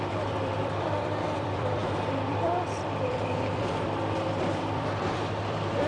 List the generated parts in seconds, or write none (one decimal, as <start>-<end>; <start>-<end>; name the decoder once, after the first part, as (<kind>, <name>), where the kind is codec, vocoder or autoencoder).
0.0-5.9 (vocoder, BigVGAN v2)